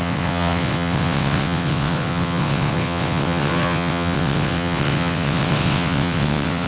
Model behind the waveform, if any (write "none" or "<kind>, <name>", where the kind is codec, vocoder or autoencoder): vocoder, WaveNeXt